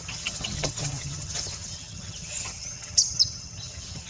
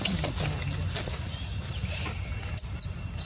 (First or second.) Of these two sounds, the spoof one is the first